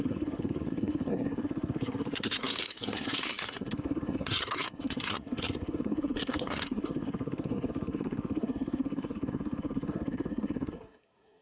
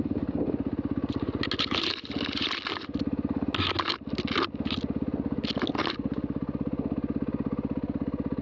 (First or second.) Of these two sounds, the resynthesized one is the first